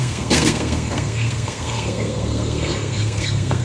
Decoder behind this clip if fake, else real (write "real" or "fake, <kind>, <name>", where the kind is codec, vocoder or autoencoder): fake, codec, SNAC